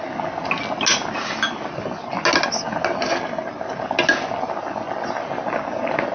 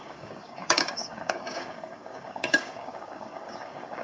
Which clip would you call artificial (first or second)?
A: second